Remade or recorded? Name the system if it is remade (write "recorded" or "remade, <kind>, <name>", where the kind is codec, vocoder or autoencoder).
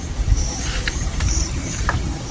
remade, vocoder, BigVGAN v2